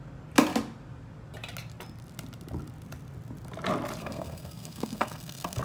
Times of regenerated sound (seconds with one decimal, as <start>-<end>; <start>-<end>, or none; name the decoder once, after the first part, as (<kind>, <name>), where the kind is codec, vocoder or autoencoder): 4.0-5.6 (codec, SNAC)